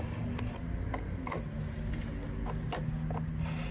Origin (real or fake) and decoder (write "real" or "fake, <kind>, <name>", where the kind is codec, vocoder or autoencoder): real